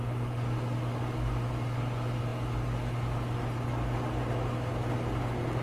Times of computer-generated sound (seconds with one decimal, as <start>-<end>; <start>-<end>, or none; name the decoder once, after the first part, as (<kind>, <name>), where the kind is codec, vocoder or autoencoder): none